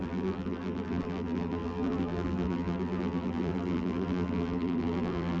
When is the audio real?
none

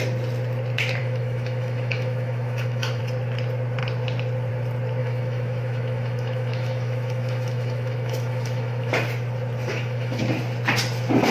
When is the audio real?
0.0-1.0; 3.0-5.0; 8.9-9.7; 10.2-11.3

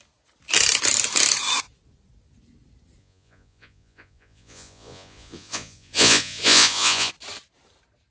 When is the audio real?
0.0-3.0; 7.1-8.1

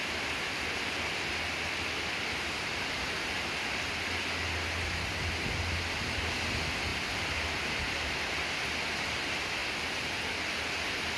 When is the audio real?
0.0-11.2

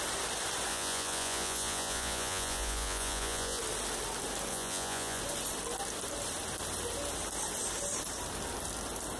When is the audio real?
0.0-0.7; 3.6-4.5; 5.2-9.2

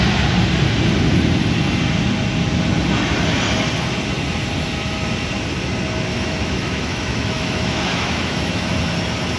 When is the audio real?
0.0-6.1; 8.7-9.4

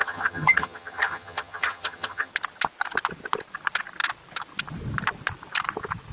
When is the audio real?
2.3-6.1

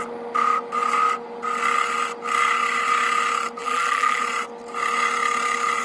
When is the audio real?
0.0-3.6; 4.2-5.8